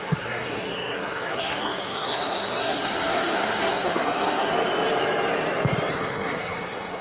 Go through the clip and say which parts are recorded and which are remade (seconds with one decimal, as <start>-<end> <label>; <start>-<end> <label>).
0.0-4.5 remade; 4.5-5.9 recorded; 5.9-7.0 remade